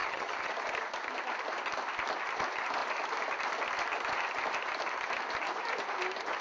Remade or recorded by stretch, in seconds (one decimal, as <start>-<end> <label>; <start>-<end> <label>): 0.0-0.5 remade; 0.5-6.4 recorded